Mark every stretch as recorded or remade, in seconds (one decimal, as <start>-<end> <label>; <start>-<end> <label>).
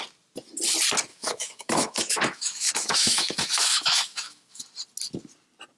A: 0.0-1.1 recorded; 1.1-4.6 remade; 4.6-5.8 recorded